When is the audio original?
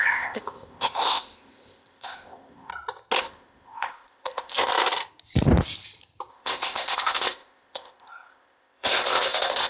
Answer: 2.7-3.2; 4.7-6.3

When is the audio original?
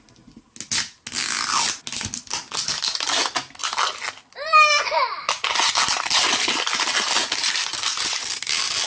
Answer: 0.0-8.9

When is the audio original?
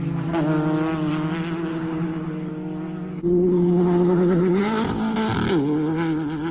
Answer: 0.0-1.7; 2.5-3.1; 4.6-6.5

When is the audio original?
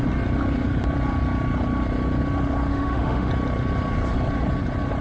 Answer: 0.0-2.7; 3.3-5.0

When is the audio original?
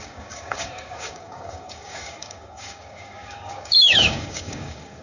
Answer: none